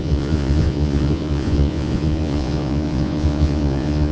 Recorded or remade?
remade